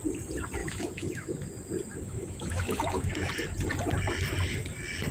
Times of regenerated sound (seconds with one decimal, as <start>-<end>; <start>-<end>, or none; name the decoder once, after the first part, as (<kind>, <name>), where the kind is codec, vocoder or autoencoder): 0.6-1.5 (autoencoder, DAC-VAE); 1.9-3.3